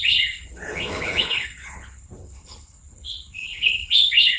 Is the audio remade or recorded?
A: remade